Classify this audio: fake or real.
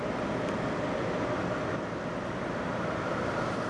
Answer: real